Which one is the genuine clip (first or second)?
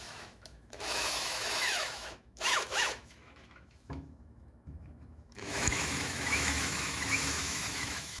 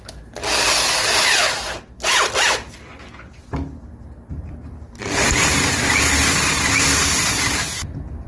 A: second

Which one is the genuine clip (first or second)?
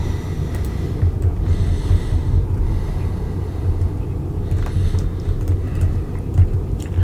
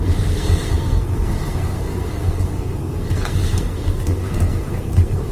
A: first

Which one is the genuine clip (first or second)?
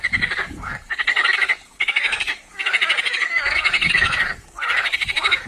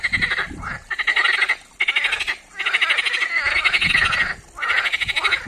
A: second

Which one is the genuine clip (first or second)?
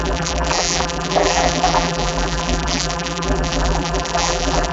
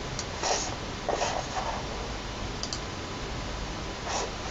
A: second